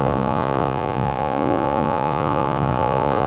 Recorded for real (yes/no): no